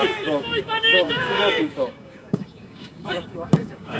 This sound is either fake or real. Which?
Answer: fake